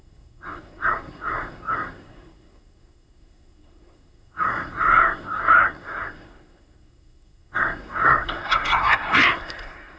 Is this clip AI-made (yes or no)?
yes